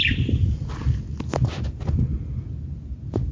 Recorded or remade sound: recorded